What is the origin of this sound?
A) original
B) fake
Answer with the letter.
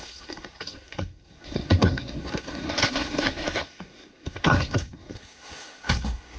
B